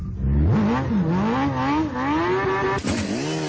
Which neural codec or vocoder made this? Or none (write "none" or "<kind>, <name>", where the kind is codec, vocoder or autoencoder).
none